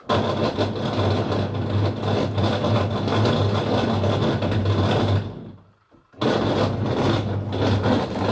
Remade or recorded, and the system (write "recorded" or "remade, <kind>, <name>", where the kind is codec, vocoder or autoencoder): recorded